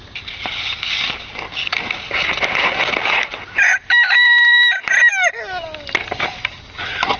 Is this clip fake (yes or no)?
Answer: no